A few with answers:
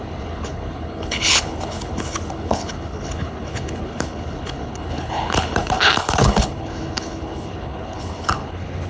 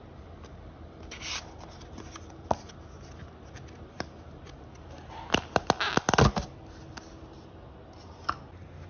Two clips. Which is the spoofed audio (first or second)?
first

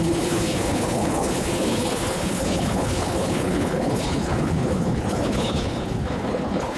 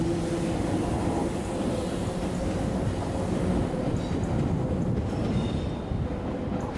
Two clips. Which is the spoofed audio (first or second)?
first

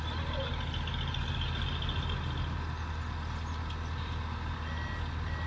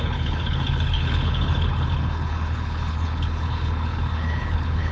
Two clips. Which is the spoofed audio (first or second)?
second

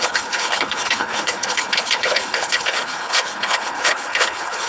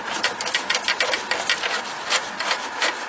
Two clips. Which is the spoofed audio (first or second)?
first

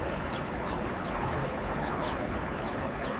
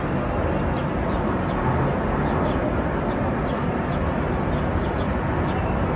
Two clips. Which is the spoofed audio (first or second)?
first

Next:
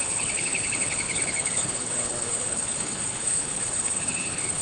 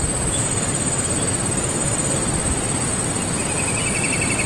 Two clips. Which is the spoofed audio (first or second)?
first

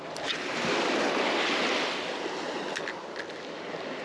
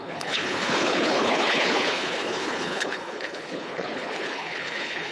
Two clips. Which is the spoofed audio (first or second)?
second